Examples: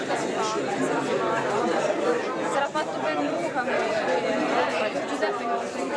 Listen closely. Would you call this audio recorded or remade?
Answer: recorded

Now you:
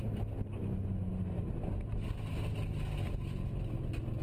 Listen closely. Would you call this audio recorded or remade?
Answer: recorded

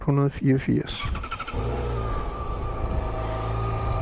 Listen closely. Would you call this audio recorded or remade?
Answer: recorded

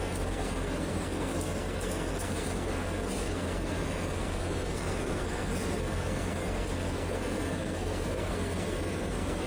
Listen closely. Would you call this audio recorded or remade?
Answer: remade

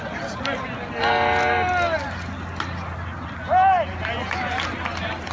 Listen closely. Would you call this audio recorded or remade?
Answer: recorded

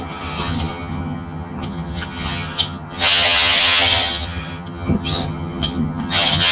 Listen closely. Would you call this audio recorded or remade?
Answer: remade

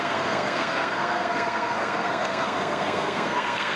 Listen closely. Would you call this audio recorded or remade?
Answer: remade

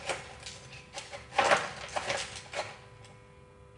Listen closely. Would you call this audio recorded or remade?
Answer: recorded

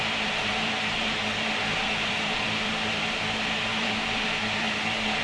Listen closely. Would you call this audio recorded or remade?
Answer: remade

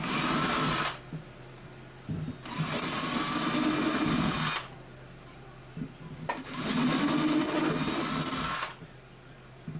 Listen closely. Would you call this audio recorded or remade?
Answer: recorded